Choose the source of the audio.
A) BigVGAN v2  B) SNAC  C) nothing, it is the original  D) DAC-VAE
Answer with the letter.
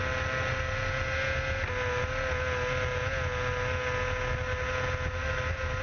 C